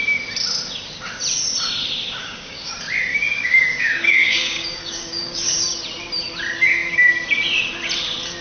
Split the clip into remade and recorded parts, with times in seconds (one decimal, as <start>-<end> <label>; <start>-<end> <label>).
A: 0.0-2.2 recorded; 2.2-2.7 remade; 2.7-3.1 recorded; 3.1-5.6 remade; 5.6-8.4 recorded